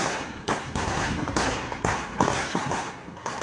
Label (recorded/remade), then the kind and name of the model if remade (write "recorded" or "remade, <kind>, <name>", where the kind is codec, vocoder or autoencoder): remade, codec, SNAC